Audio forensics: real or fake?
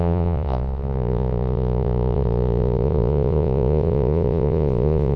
fake